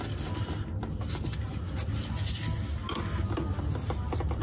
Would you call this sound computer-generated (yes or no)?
no